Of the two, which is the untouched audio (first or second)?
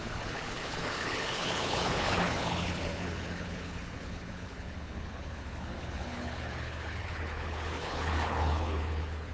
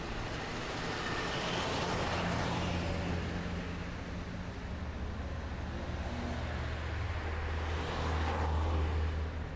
second